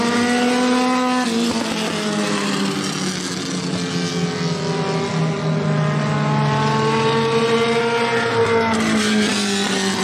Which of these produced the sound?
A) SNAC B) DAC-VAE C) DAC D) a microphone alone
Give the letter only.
D